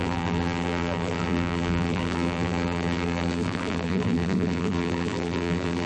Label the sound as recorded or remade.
remade